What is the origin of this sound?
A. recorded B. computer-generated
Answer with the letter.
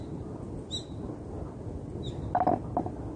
A